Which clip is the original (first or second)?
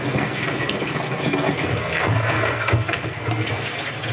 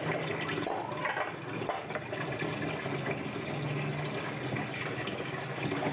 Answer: second